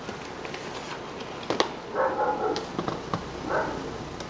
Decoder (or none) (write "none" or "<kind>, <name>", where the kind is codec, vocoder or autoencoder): none